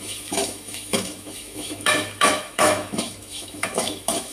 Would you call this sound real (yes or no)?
no